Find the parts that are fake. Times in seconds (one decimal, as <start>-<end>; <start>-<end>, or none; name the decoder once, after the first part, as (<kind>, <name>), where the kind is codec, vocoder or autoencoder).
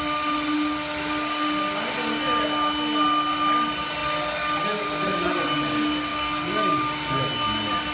6.1-6.8 (codec, DAC)